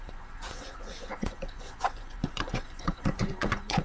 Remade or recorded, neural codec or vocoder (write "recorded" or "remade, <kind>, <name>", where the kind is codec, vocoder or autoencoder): remade, vocoder, Vocos